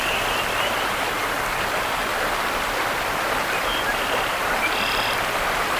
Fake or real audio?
fake